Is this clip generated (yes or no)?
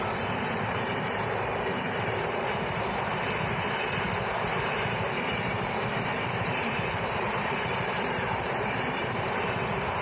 yes